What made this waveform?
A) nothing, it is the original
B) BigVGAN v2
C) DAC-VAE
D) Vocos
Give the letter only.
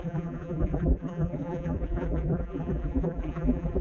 B